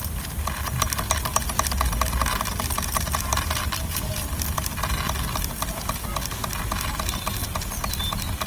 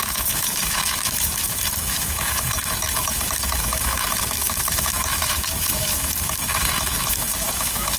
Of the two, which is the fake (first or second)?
second